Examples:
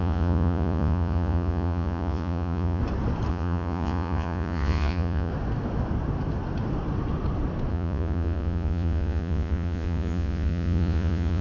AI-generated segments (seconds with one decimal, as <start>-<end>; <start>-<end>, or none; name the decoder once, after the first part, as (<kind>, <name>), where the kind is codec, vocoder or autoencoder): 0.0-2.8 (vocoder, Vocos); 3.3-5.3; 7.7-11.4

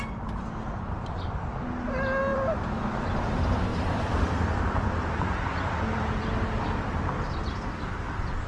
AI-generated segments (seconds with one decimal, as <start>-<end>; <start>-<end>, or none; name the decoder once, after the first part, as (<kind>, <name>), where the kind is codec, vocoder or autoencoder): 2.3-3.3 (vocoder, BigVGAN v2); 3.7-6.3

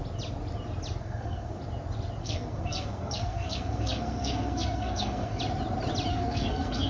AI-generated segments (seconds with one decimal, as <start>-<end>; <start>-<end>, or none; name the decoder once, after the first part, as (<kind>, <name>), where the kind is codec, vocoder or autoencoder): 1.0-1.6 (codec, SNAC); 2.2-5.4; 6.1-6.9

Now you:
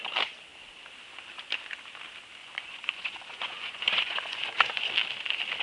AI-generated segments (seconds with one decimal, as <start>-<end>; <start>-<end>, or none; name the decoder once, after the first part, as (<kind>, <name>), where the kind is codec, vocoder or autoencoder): 2.4-4.9 (vocoder, Vocos)

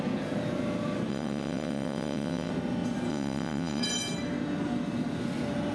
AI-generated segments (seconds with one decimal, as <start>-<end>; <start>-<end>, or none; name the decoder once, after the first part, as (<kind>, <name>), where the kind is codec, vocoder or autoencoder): 1.1-2.5 (vocoder, WaveNeXt); 3.1-3.8

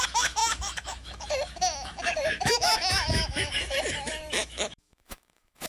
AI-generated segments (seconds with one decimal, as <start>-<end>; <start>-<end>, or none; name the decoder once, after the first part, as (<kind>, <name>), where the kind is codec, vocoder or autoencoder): 0.0-5.7 (autoencoder, DAC-VAE)

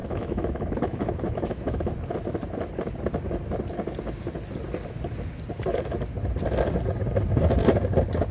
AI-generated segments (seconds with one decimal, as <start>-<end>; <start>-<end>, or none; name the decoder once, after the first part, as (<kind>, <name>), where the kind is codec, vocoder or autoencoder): 0.0-1.9 (autoencoder, DAC-VAE)

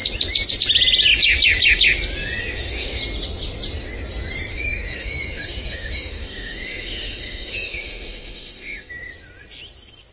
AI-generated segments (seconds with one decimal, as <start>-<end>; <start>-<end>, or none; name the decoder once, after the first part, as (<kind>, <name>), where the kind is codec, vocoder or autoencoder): 2.4-3.0 (autoencoder, DAC-VAE); 4.5-8.9